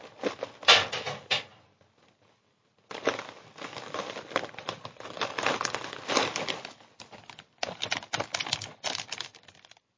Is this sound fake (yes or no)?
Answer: no